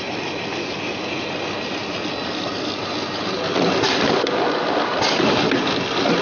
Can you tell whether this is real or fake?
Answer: real